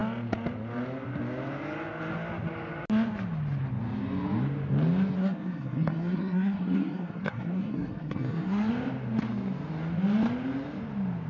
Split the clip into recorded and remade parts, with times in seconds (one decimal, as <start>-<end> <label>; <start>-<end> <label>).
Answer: 0.0-5.2 recorded; 5.2-8.7 remade; 8.7-11.3 recorded